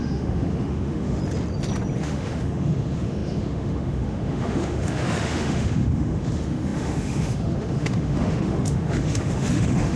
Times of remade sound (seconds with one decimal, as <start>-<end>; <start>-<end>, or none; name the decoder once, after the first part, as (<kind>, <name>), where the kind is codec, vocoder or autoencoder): 0.0-1.2 (autoencoder, DAC-VAE); 2.0-10.0